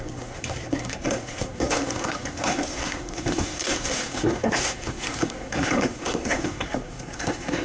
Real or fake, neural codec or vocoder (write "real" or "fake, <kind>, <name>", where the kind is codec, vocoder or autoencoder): fake, codec, SNAC